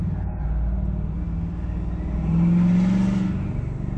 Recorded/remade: recorded